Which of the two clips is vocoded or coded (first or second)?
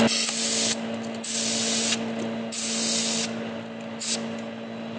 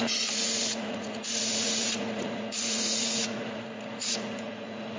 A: second